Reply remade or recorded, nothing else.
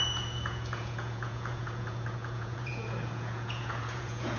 remade